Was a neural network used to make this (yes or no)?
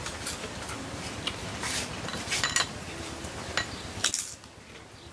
no